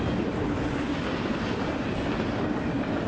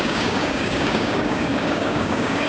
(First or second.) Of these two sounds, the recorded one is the first